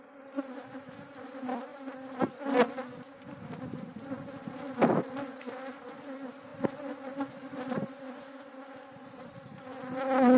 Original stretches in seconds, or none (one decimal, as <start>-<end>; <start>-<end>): 0.0-10.4